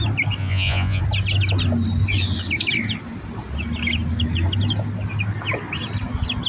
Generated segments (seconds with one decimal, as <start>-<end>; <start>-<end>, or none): 0.4-1.0